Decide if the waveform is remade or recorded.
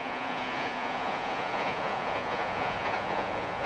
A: remade